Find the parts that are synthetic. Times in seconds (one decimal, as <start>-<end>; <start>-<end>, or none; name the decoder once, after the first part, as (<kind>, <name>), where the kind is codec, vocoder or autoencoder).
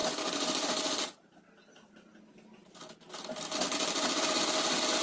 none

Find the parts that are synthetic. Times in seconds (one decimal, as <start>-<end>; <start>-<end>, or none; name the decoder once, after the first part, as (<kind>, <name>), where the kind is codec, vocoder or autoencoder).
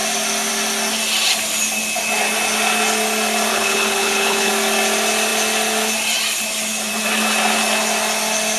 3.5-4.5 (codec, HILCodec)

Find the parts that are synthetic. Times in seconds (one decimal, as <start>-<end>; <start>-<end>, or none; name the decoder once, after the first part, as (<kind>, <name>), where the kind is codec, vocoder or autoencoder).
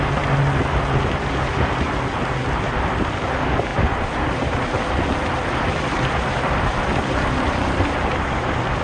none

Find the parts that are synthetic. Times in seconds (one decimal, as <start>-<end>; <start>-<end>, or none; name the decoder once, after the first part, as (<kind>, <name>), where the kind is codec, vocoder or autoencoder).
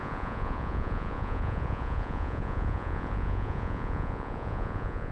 0.0-5.1 (vocoder, Vocos)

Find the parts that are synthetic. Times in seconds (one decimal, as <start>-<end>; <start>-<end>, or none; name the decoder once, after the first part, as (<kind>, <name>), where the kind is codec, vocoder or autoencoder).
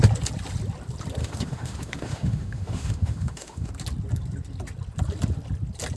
1.2-3.7 (autoencoder, DAC-VAE)